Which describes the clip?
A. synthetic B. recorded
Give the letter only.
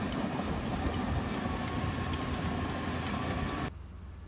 B